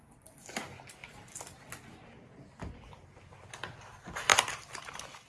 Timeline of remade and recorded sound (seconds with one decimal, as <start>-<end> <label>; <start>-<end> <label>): 0.0-1.0 recorded; 1.0-3.5 remade; 3.5-4.3 recorded; 4.3-4.8 remade; 4.8-5.3 recorded